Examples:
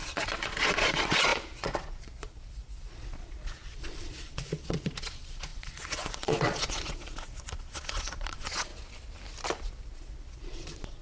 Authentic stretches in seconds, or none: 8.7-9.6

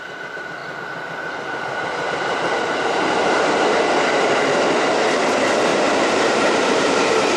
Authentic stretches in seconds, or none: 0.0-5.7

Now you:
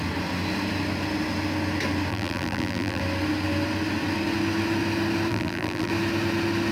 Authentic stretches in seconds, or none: 0.0-2.1; 3.0-5.3; 5.9-6.7